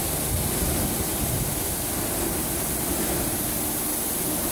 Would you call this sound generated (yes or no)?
no